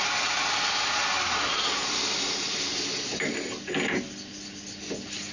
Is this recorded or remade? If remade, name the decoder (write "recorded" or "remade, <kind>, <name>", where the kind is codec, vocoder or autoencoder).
recorded